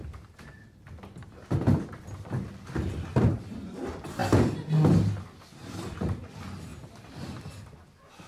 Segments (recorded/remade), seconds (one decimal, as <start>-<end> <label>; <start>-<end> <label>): 0.0-8.3 recorded